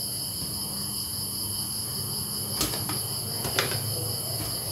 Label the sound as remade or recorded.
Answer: recorded